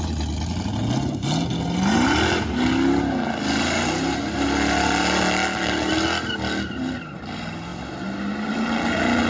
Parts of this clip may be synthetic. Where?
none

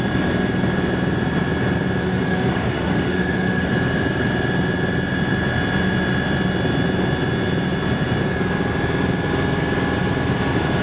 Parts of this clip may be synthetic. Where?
2.0-3.7 (autoencoder, DAC-VAE)

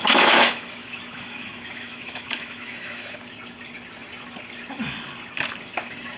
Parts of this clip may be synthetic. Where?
0.0-3.2 (autoencoder, DAC-VAE)

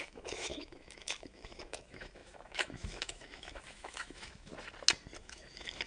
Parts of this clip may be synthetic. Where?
0.0-4.5 (autoencoder, DAC-VAE); 5.2-5.9

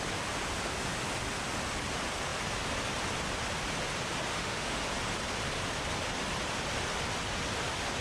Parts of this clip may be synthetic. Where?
4.3-4.8 (autoencoder, DAC-VAE)

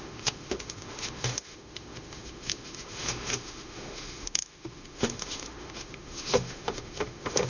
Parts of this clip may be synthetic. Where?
0.0-7.5 (autoencoder, DAC-VAE)

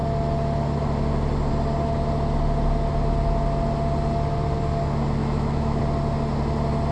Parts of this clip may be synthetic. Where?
5.2-5.8 (autoencoder, DAC-VAE)

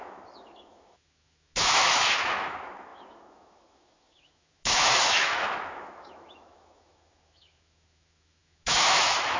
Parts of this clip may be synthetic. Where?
0.0-9.4 (autoencoder, DAC-VAE)